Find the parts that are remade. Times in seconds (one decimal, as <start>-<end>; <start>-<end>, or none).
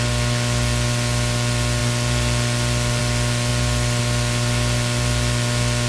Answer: none